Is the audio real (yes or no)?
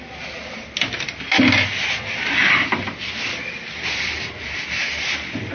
yes